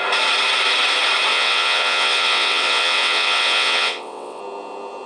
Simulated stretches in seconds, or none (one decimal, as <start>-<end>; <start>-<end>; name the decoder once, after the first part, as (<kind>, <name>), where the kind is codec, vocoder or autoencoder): 1.3-4.4 (vocoder, WaveNeXt)